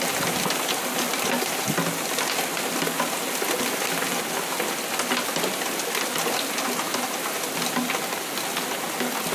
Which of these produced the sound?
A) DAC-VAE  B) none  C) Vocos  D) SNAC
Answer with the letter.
B